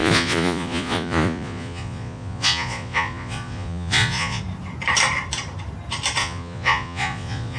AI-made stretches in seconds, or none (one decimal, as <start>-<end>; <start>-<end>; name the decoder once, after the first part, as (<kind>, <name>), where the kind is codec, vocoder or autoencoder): 0.0-4.4 (vocoder, Vocos); 6.2-7.6